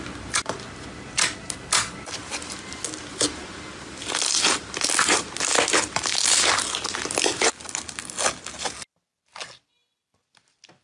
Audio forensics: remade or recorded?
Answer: recorded